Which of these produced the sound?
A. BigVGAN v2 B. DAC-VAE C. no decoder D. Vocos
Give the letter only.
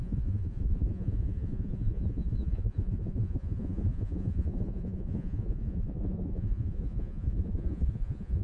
D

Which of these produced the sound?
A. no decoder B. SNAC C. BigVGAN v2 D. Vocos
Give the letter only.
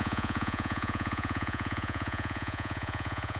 D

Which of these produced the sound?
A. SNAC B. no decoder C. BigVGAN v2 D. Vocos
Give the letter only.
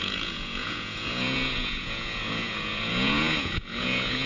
D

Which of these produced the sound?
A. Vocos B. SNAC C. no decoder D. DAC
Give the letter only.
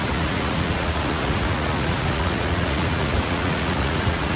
A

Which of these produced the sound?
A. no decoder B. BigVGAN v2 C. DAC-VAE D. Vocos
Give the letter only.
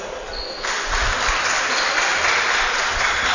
A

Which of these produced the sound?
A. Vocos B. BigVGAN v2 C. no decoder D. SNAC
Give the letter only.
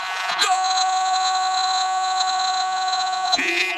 A